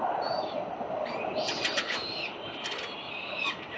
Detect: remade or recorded remade